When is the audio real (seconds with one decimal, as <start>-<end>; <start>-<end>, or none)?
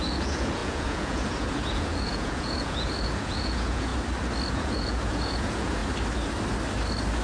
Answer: 3.9-4.5; 5.8-7.2